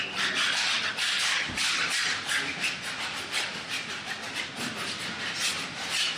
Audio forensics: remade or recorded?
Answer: recorded